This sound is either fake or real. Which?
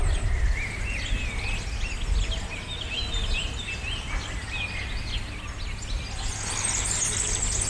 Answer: real